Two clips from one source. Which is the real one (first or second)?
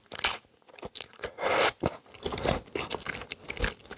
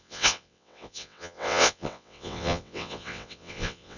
first